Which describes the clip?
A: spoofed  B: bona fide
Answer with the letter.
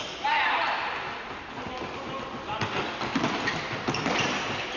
B